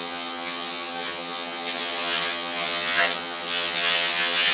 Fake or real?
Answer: fake